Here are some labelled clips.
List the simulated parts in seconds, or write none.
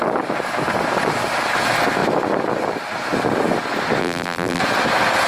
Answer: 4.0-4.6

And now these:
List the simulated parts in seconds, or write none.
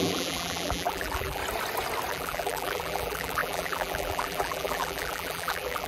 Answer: 0.0-1.4; 2.1-5.9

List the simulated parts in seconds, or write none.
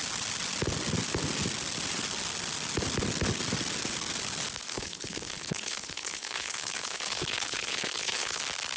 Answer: 4.7-8.4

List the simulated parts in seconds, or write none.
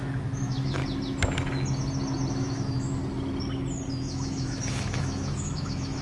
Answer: 0.0-0.8; 2.3-3.0; 3.9-6.0